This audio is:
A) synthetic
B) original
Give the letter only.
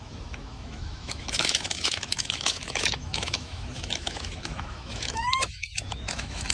A